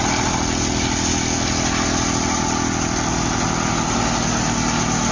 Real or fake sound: real